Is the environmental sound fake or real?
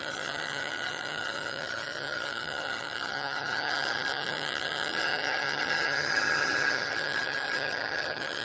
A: fake